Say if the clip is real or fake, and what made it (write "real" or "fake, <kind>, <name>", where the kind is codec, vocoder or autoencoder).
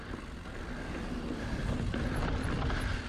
real